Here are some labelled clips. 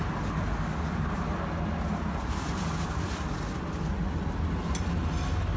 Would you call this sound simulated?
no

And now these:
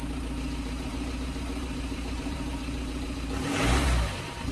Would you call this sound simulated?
yes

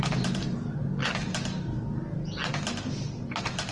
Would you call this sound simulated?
no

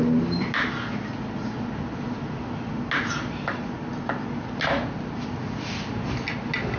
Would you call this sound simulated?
no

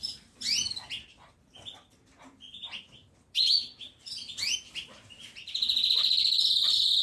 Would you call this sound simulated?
no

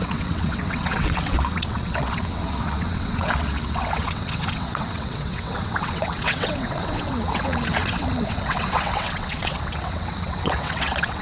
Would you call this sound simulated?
yes